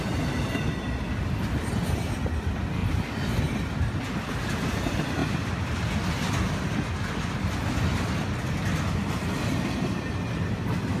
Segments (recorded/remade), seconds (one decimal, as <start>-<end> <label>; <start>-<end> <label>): 0.0-2.8 recorded; 2.8-3.4 remade; 3.4-5.2 recorded; 5.2-6.9 remade; 6.9-11.0 recorded